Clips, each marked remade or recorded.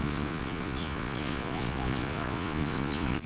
remade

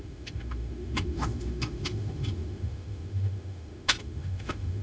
remade